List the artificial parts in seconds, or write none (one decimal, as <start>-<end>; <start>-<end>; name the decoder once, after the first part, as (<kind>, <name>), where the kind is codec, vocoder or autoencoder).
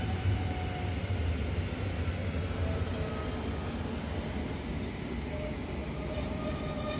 5.8-6.6 (vocoder, BigVGAN v2)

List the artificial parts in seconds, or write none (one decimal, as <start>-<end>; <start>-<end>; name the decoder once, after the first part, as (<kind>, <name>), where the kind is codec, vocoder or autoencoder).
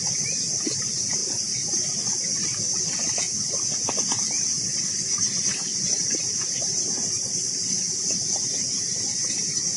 5.7-9.8 (vocoder, BigVGAN v2)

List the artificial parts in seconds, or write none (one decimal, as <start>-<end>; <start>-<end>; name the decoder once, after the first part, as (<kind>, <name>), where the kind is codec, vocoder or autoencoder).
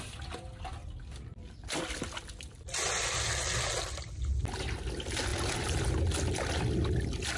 none